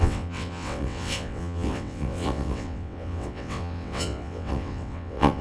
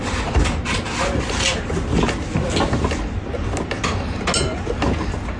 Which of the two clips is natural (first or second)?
second